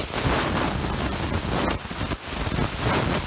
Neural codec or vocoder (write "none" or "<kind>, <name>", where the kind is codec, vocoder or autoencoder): none